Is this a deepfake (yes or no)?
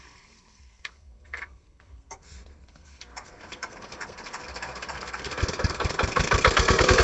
yes